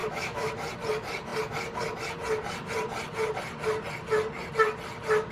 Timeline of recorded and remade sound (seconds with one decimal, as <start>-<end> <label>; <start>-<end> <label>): 0.0-0.5 remade; 0.5-5.3 recorded